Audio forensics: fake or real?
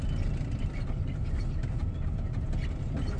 real